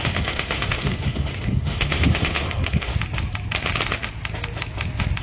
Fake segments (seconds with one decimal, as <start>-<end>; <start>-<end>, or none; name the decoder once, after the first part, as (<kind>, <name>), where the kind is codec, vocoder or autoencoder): 0.0-2.9 (autoencoder, DAC-VAE)